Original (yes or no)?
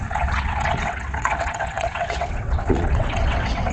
no